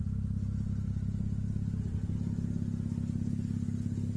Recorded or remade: recorded